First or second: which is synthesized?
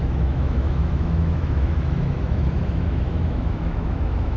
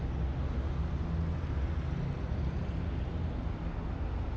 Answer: first